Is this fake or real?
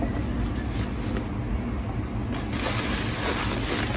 real